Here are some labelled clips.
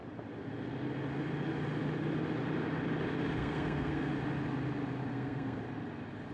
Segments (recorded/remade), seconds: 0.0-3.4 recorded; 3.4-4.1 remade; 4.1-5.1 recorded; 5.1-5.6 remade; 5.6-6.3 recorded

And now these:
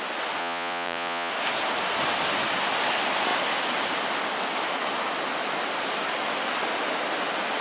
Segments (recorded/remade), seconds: 0.0-0.4 recorded; 0.4-1.3 remade; 1.3-7.6 recorded